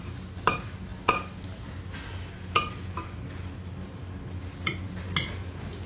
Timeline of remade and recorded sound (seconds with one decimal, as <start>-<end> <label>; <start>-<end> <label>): 0.0-5.9 recorded